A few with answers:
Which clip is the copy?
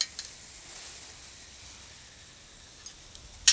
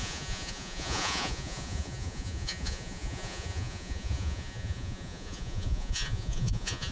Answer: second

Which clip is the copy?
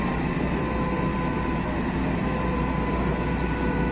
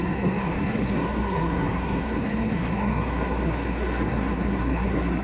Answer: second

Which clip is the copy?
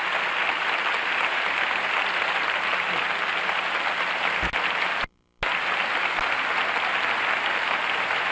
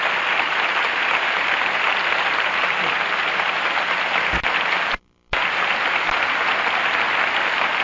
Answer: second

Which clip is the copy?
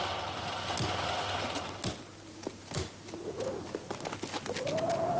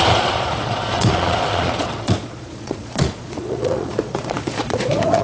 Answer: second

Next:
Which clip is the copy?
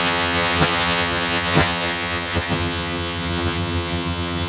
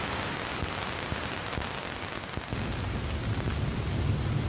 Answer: first